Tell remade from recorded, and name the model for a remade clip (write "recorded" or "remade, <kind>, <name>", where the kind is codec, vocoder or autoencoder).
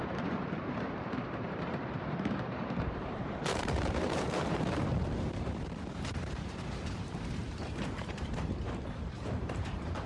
remade, vocoder, BigVGAN v2